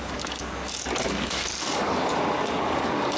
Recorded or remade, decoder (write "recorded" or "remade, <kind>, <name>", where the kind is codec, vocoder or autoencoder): remade, codec, DAC